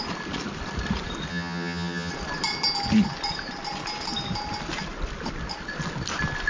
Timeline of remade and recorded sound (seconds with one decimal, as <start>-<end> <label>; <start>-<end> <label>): 0.0-1.3 recorded; 1.3-2.1 remade; 2.1-6.5 recorded